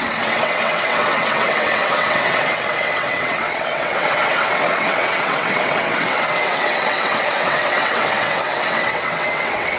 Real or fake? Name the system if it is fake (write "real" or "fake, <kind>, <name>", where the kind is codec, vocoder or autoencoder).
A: fake, vocoder, WaveNeXt